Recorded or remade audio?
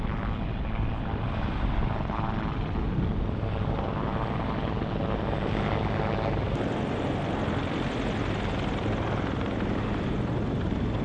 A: recorded